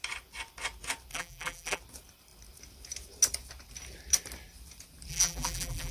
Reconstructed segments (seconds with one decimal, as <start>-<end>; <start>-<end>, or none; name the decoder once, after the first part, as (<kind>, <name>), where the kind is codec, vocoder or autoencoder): 1.1-1.8 (vocoder, BigVGAN v2); 5.1-5.9